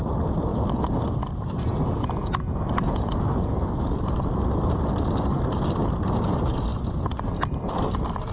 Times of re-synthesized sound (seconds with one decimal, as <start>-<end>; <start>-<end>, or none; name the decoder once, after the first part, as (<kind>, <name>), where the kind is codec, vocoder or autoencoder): 0.0-0.5 (vocoder, BigVGAN v2); 4.0-8.3